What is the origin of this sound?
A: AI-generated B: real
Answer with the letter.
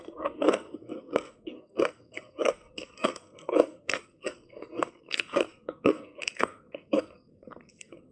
A